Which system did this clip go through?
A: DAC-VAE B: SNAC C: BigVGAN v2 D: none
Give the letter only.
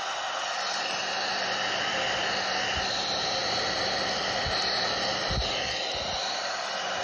D